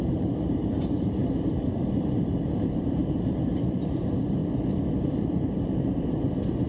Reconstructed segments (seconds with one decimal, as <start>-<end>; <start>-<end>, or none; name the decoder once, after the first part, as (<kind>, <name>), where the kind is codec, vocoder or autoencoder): 0.0-4.4 (vocoder, BigVGAN v2); 5.0-6.7